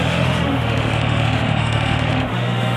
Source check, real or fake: fake